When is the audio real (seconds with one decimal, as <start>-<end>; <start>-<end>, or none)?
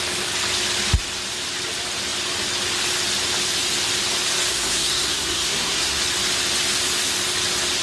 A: 0.0-4.5; 6.0-7.8